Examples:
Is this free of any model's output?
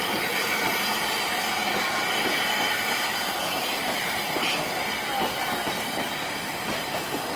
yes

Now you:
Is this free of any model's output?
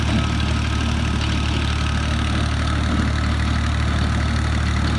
yes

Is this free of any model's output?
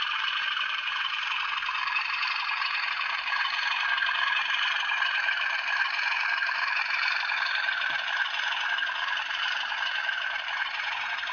no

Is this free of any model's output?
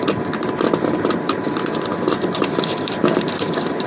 no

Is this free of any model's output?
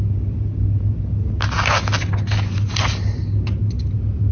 yes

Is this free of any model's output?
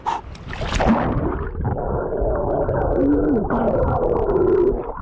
yes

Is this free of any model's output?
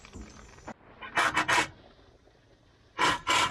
yes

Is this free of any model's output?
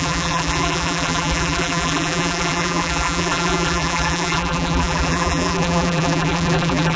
no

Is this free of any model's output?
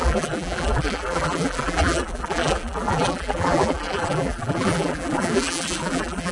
no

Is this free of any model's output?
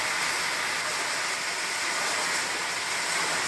yes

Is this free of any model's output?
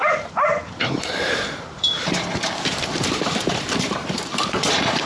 no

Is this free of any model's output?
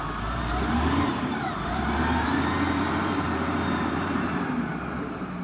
no